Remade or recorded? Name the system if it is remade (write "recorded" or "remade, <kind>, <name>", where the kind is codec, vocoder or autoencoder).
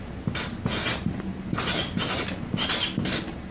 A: recorded